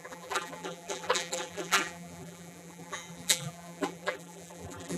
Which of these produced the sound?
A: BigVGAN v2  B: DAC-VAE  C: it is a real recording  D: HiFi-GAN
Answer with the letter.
A